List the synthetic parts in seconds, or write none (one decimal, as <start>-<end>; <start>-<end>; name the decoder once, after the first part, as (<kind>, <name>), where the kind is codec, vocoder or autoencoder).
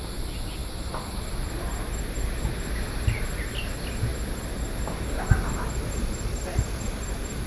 none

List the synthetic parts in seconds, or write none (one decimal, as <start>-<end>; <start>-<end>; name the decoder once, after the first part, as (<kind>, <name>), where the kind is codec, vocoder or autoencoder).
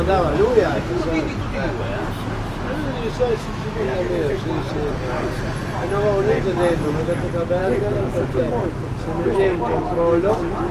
3.3-4.5 (autoencoder, DAC-VAE); 7.6-8.4